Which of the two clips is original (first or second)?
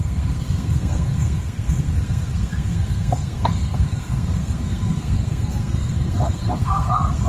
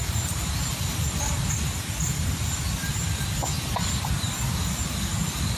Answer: second